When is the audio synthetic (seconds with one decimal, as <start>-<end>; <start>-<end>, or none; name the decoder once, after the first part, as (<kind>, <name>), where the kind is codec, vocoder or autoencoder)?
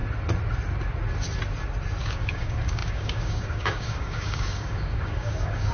2.0-5.7 (codec, DAC)